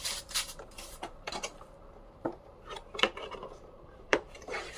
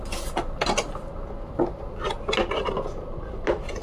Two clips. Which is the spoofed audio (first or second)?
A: first